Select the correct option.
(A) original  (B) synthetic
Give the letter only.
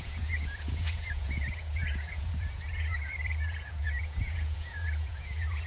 B